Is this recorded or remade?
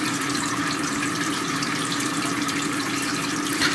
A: remade